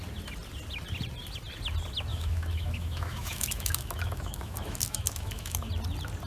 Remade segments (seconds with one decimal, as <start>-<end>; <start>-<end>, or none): 2.1-5.7

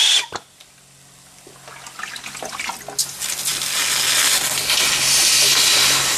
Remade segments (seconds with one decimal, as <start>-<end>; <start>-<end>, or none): none

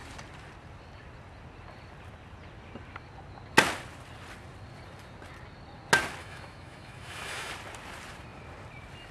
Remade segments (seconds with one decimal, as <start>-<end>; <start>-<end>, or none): 6.2-7.5

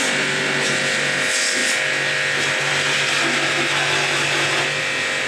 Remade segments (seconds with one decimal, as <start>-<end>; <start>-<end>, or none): none

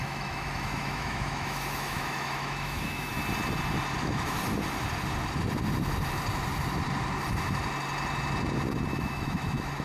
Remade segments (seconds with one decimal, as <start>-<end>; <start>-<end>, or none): 0.0-3.1; 4.0-4.4; 8.9-9.8